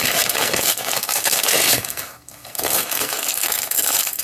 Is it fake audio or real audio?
fake